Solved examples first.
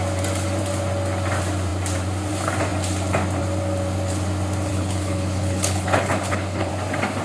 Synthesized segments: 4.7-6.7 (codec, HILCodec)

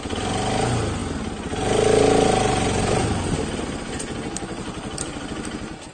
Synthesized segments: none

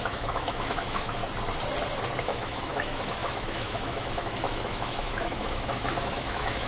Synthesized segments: 0.0-1.2 (autoencoder, DAC-VAE); 2.2-6.7

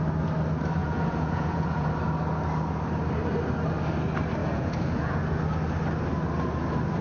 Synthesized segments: 0.8-1.9 (vocoder, Vocos); 4.4-5.2

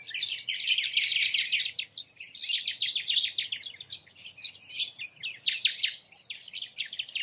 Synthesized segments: none

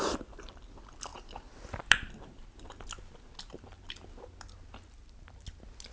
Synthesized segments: none